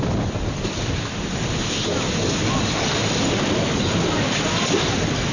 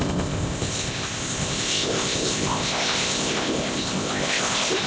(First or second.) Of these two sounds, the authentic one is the first